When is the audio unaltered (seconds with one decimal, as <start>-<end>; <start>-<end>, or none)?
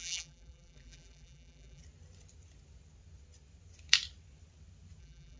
1.8-5.0